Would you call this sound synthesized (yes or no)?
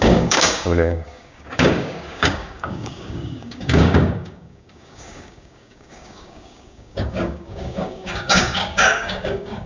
yes